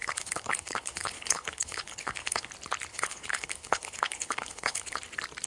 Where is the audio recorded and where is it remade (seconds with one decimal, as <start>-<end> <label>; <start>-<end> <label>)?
0.0-2.5 remade; 2.5-2.9 recorded; 2.9-5.0 remade; 5.0-5.5 recorded